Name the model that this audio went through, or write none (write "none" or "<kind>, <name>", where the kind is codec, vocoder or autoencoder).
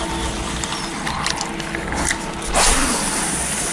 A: none